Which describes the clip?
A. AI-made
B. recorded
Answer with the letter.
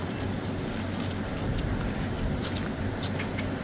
B